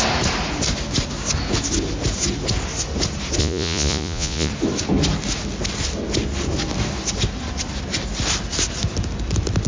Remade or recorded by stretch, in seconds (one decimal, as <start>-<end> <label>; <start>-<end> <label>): 0.0-3.4 recorded; 3.4-4.5 remade; 4.5-9.7 recorded